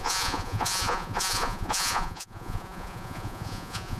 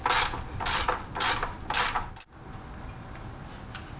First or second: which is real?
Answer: second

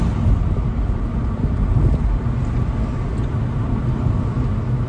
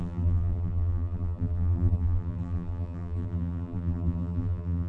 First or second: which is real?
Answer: first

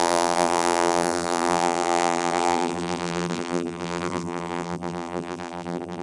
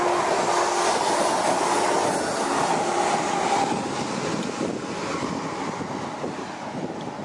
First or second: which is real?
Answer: second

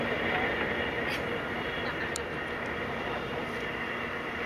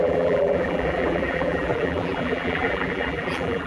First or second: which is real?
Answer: first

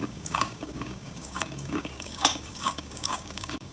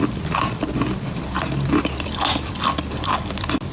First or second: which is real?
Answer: second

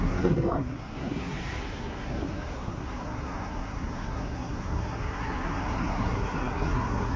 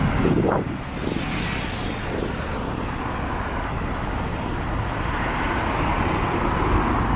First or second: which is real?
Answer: second